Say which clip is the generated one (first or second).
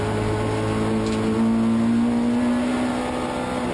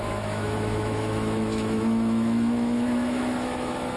second